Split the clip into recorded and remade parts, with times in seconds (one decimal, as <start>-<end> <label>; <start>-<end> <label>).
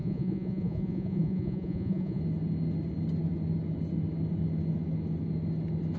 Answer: 0.0-2.2 remade; 2.2-6.0 recorded